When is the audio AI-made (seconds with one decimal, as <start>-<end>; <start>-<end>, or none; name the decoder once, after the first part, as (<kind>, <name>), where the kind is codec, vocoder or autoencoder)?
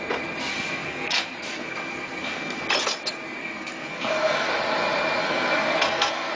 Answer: 0.5-2.6 (codec, SNAC); 3.4-4.5; 5.2-6.3